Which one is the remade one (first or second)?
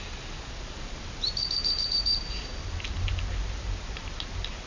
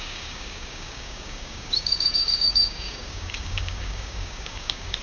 second